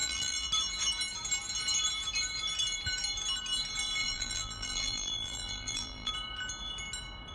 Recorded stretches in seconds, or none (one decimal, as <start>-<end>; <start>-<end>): 0.5-4.0; 6.1-7.3